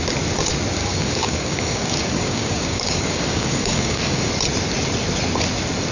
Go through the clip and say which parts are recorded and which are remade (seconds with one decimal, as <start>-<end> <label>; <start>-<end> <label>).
0.0-0.8 recorded; 0.8-4.3 remade; 4.3-5.9 recorded